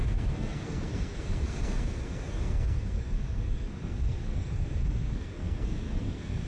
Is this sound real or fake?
fake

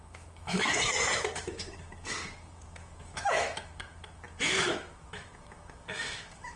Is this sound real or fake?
fake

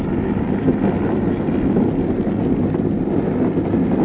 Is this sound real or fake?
real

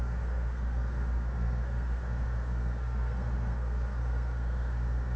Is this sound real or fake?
fake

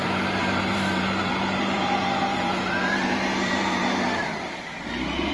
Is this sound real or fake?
fake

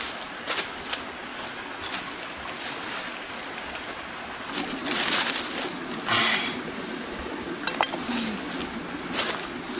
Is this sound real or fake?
real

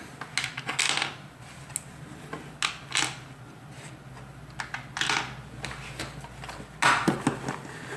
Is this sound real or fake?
real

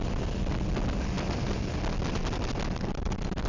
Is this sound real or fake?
real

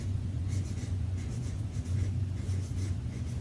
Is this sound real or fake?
fake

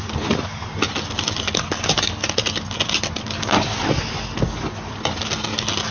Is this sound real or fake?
real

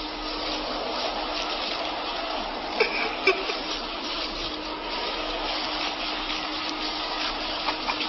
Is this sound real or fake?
real